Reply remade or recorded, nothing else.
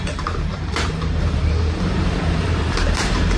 remade